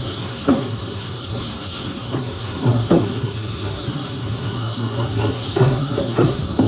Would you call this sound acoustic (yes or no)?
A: no